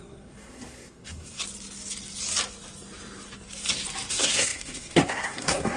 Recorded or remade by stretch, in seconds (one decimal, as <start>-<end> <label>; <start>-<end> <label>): 0.0-1.4 remade; 1.4-4.1 recorded; 4.1-5.8 remade